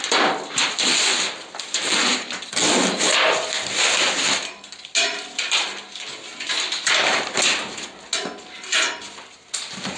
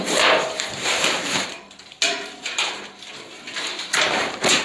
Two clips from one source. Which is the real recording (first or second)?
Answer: first